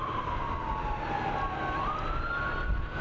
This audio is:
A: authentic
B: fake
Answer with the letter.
A